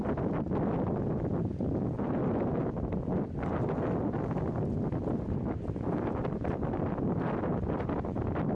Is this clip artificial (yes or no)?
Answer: no